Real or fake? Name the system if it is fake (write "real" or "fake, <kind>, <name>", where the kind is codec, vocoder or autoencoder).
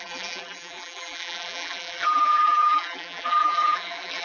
fake, vocoder, BigVGAN v2